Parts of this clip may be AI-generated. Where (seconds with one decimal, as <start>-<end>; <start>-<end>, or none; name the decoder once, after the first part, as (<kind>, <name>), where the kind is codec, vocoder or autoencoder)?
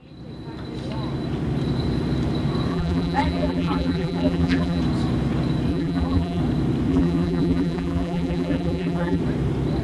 2.7-4.8 (vocoder, BigVGAN v2); 5.7-6.4; 6.9-9.2